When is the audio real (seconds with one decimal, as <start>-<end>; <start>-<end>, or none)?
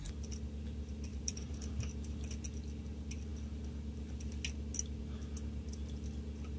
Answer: 0.0-1.1; 1.7-6.6